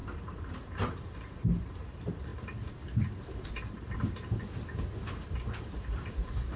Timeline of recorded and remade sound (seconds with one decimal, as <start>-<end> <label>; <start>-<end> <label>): 0.0-2.3 remade; 2.3-5.1 recorded; 5.1-6.6 remade